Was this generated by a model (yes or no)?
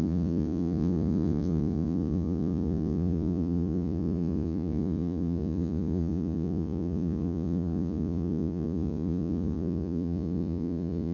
yes